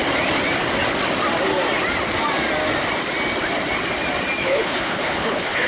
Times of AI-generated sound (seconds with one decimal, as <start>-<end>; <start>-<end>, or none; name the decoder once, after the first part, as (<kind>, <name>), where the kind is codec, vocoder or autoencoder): 4.4-5.7 (codec, HILCodec)